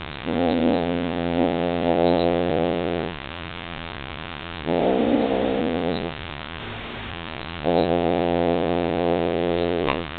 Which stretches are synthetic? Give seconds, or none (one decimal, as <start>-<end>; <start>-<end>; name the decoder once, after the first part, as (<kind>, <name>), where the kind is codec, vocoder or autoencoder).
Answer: 0.0-4.8 (vocoder, Vocos); 5.6-6.6; 7.1-10.2